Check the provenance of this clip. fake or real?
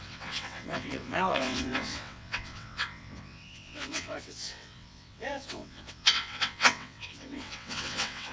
fake